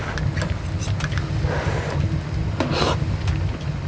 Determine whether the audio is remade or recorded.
recorded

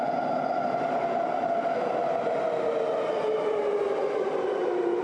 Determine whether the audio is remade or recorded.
recorded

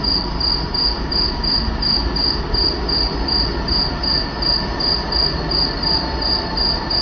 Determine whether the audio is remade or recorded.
recorded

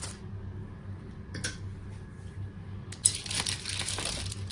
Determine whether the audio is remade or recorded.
recorded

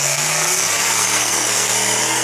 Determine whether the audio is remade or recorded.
remade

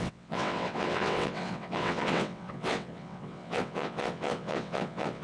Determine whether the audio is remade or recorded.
remade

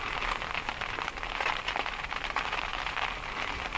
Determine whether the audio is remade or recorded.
recorded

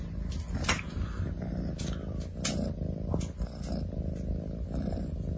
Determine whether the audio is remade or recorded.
recorded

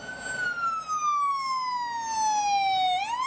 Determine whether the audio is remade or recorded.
recorded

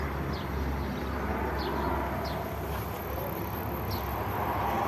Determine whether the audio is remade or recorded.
recorded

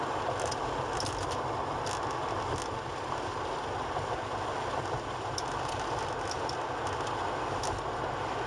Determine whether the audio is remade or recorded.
recorded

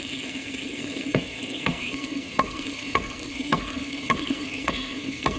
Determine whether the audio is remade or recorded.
remade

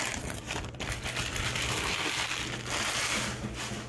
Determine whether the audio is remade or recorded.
recorded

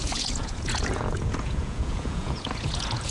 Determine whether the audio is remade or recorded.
remade